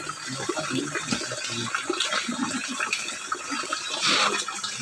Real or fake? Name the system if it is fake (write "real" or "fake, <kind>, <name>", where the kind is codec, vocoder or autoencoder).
real